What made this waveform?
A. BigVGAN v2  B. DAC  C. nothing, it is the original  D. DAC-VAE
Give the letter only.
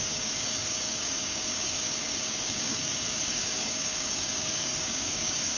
B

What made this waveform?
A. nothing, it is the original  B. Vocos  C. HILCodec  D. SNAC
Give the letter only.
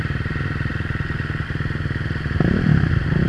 A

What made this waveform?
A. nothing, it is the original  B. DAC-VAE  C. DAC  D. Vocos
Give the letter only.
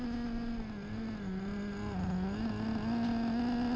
A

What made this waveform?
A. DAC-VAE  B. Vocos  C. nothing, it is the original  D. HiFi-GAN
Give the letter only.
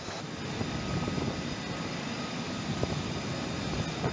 C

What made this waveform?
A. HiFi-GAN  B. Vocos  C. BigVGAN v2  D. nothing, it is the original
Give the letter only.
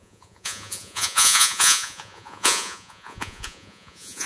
B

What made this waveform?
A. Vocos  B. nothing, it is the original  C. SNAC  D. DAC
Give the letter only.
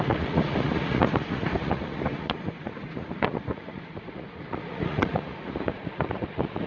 A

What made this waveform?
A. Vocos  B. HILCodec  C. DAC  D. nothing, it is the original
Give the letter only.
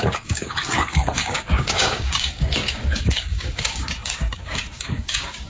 C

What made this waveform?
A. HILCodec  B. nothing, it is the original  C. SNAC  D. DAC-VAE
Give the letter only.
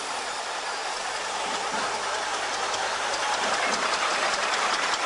B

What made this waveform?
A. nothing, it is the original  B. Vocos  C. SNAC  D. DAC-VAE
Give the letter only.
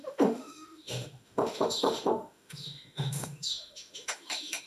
D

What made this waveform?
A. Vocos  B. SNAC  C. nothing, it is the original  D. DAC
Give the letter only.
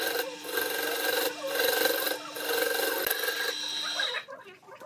C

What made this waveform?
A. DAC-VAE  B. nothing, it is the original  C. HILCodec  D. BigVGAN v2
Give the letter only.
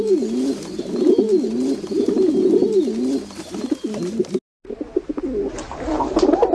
B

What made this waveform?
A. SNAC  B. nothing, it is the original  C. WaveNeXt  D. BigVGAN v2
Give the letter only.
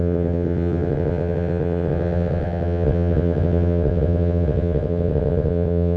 C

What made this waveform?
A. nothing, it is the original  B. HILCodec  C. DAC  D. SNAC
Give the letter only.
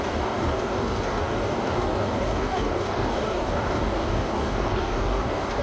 C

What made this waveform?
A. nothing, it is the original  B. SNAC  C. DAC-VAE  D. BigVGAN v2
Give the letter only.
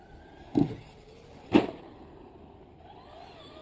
A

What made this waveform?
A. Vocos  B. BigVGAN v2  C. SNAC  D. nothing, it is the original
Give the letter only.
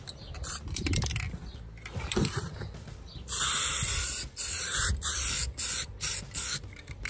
D